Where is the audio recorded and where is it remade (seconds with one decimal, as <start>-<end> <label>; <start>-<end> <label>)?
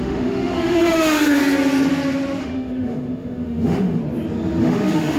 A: 0.0-1.4 remade; 1.4-2.4 recorded; 2.4-4.0 remade; 4.0-4.6 recorded; 4.6-5.2 remade